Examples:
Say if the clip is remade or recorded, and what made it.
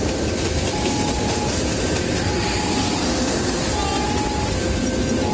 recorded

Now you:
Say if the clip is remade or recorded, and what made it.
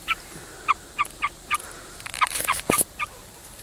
remade, vocoder, BigVGAN v2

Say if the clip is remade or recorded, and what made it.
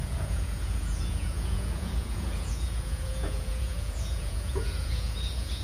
remade, vocoder, Vocos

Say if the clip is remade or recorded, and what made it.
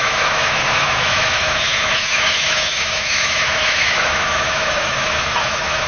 remade, autoencoder, DAC-VAE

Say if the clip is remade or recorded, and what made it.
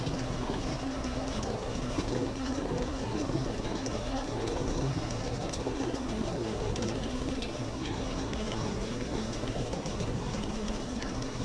remade, codec, SNAC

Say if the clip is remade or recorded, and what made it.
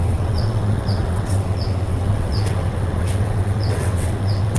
remade, vocoder, WaveNeXt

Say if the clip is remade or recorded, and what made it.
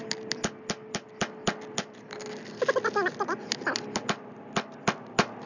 recorded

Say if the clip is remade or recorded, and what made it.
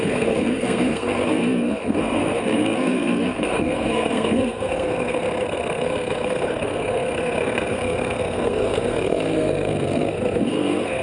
remade, codec, SNAC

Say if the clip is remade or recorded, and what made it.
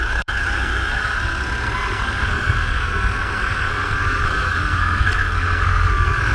remade, codec, SNAC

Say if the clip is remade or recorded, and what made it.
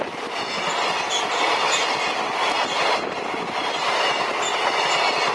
recorded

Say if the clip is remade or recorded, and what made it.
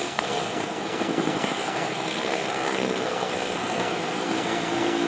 remade, codec, SNAC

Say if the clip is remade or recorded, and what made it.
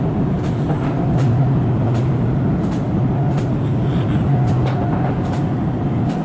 remade, vocoder, BigVGAN v2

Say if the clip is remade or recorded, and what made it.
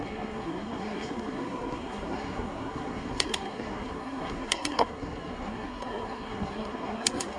remade, codec, SNAC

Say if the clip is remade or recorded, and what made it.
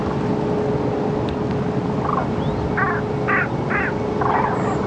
recorded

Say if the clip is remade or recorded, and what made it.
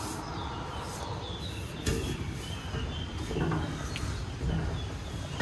recorded